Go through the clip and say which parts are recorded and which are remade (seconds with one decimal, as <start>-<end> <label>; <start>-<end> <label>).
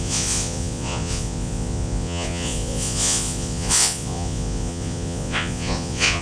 0.0-6.2 remade